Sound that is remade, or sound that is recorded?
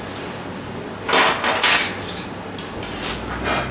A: recorded